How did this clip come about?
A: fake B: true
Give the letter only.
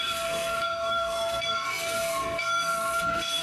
A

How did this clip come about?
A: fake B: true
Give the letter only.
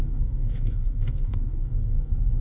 A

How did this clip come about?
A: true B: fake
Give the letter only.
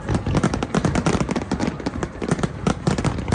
A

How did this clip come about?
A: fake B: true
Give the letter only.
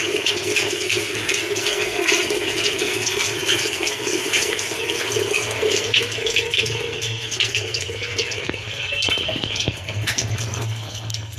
A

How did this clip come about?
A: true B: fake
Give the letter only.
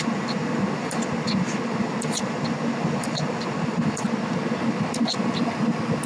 A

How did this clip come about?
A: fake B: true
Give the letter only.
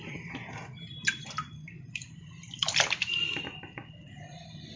B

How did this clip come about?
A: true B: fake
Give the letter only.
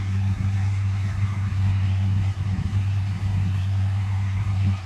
B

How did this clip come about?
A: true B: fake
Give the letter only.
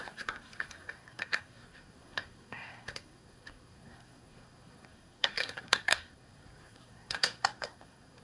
B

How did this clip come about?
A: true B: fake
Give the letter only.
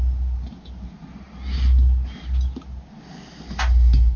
A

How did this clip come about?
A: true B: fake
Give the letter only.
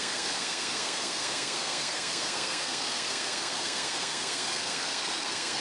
B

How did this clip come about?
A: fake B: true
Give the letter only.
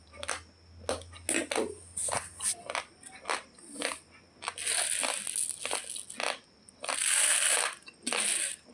B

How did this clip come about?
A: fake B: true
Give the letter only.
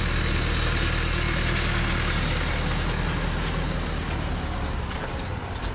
B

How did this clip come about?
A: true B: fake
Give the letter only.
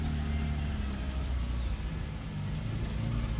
A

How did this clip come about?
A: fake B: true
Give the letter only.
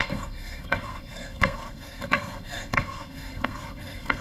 A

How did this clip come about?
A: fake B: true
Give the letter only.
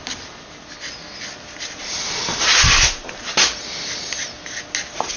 B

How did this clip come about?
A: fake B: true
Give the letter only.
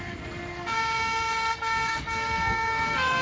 A